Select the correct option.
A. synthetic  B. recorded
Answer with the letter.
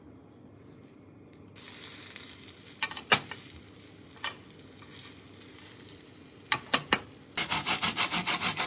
B